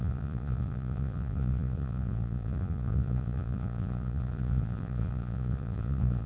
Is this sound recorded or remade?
remade